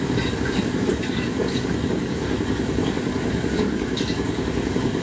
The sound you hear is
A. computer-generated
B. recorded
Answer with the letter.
A